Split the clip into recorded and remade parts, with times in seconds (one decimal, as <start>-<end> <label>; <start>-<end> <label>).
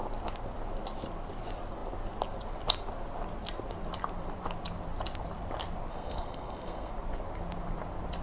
0.0-5.9 recorded; 5.9-6.9 remade; 6.9-8.2 recorded